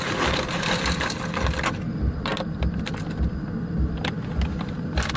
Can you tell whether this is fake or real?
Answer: real